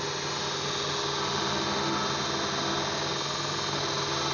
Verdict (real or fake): real